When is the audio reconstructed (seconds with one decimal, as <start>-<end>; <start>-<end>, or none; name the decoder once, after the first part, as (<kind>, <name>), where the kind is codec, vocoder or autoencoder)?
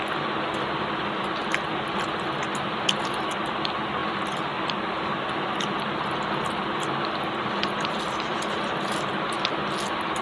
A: none